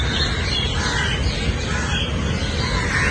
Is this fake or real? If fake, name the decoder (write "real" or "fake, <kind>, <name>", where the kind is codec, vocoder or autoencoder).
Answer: real